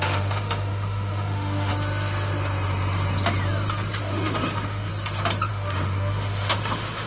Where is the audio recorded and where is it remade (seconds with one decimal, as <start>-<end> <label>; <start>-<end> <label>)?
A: 0.0-1.7 remade; 1.7-4.0 recorded; 4.0-4.9 remade; 4.9-5.5 recorded; 5.5-7.1 remade